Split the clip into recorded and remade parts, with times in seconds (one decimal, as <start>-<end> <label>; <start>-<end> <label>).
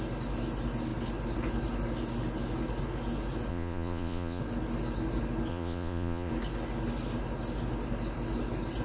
0.0-3.5 recorded; 3.5-4.4 remade; 4.4-5.5 recorded; 5.5-6.3 remade; 6.3-8.8 recorded